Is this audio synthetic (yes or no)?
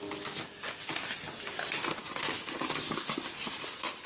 no